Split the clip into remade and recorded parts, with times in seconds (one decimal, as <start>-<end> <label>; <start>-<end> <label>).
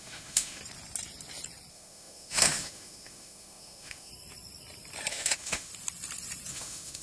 0.0-0.6 remade; 0.6-1.7 recorded; 1.7-4.1 remade; 4.1-5.1 recorded; 5.1-5.7 remade; 5.7-6.5 recorded; 6.5-7.0 remade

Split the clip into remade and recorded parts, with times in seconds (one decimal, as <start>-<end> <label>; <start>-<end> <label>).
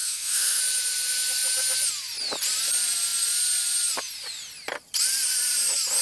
0.0-0.6 remade; 0.6-6.0 recorded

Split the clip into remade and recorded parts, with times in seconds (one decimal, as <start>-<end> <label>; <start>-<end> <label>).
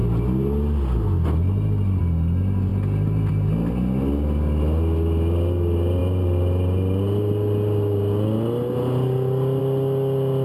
0.0-10.4 recorded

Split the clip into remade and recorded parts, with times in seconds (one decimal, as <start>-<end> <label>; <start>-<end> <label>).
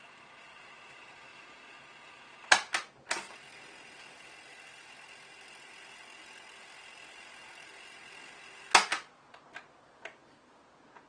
0.0-11.1 recorded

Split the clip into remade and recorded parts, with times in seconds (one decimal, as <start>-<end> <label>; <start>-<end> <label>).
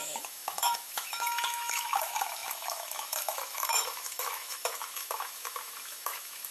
0.0-6.5 remade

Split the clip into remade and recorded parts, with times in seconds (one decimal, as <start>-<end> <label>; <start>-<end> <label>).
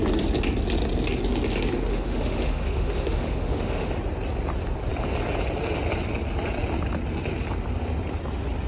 0.0-1.9 recorded; 1.9-3.9 remade; 3.9-8.7 recorded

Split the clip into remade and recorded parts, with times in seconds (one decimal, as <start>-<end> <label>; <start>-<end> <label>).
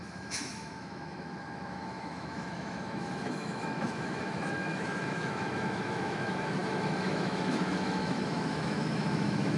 0.0-9.6 remade